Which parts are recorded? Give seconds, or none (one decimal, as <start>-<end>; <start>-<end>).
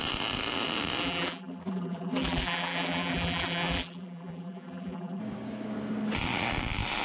0.0-1.0; 5.2-7.0